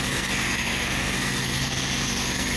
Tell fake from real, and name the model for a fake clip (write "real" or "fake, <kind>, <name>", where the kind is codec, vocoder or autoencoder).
fake, codec, SNAC